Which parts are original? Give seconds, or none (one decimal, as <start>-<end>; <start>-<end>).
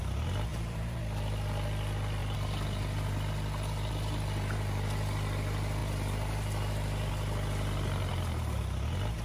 0.0-0.5; 1.0-8.1; 8.6-9.2